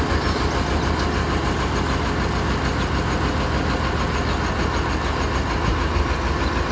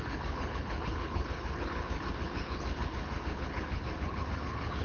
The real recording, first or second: first